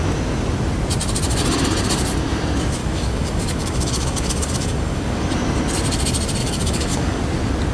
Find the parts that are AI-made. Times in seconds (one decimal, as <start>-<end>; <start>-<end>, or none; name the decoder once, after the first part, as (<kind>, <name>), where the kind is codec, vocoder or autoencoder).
2.8-5.3 (codec, DAC); 6.4-7.2